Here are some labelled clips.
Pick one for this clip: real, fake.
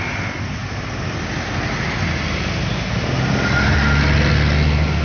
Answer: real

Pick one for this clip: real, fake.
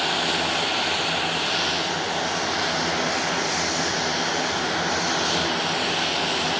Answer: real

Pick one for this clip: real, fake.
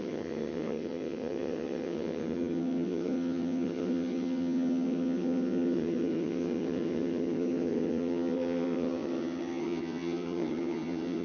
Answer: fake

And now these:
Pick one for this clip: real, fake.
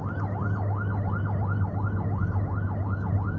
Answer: real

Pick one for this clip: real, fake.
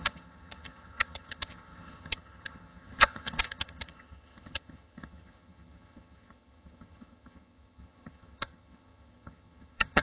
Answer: fake